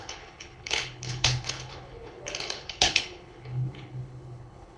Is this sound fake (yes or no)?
yes